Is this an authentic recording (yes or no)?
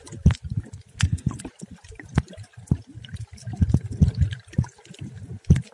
yes